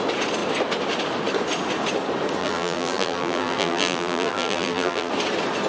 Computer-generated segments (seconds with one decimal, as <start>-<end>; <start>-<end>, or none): 2.4-5.1